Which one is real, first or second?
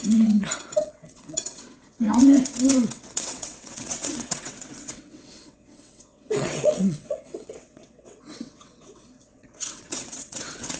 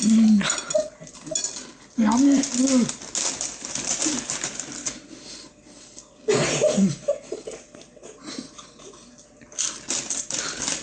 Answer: second